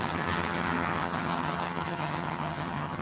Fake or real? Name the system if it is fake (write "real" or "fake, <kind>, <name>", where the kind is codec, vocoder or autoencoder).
fake, vocoder, HiFi-GAN